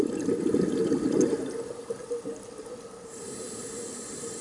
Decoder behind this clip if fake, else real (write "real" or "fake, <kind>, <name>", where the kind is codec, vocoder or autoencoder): real